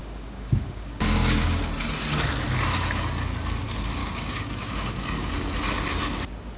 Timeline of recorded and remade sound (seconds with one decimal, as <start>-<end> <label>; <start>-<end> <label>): 0.0-1.6 remade; 1.6-4.0 recorded; 4.0-5.3 remade; 5.3-6.6 recorded